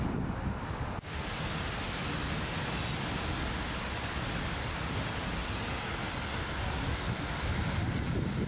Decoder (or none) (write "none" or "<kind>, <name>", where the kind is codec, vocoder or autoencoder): none